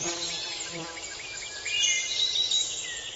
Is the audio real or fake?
real